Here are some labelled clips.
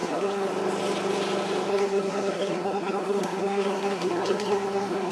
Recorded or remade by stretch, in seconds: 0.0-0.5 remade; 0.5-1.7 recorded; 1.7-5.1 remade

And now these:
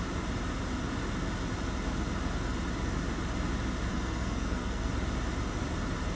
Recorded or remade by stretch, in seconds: 0.0-3.9 recorded; 3.9-4.9 remade; 4.9-6.1 recorded

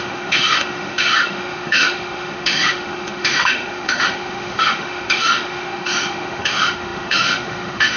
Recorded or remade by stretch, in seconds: 0.0-8.0 remade

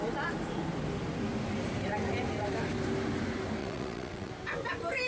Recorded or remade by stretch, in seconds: 0.0-3.6 recorded; 3.6-4.3 remade; 4.3-5.1 recorded

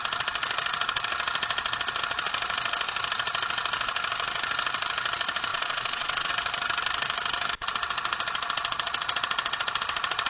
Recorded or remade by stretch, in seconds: 0.0-5.5 recorded; 5.5-6.3 remade; 6.3-10.3 recorded

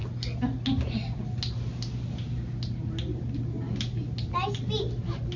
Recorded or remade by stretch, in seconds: 0.0-5.4 recorded

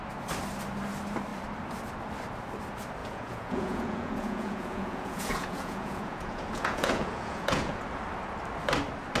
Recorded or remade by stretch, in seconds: 0.0-3.0 recorded; 3.0-7.8 remade; 7.8-9.2 recorded